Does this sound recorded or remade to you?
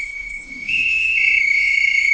remade